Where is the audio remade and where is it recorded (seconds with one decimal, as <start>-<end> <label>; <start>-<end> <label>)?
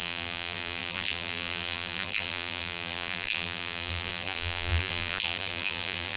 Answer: 0.0-6.2 remade